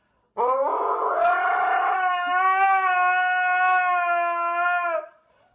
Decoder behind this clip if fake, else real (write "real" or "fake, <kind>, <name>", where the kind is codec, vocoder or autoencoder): real